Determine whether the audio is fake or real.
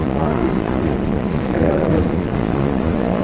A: fake